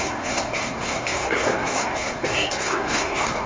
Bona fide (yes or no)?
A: no